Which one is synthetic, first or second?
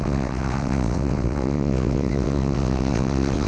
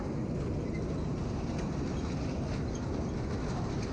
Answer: first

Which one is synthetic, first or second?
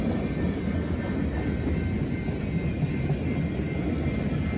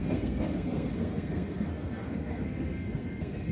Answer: second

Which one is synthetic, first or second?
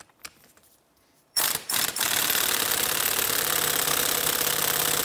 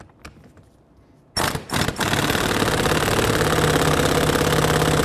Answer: first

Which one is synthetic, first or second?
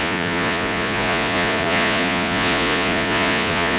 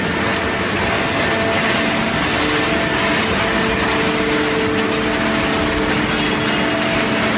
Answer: first